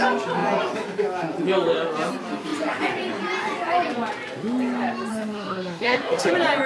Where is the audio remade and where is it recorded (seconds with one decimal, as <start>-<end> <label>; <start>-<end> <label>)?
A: 0.0-5.1 recorded; 5.1-6.3 remade; 6.3-6.7 recorded